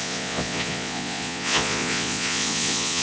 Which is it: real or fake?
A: fake